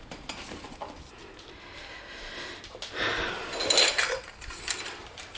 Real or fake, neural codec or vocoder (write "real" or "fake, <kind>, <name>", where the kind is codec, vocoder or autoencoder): real